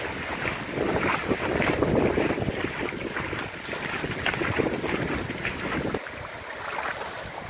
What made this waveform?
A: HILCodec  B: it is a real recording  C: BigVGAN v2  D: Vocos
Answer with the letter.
B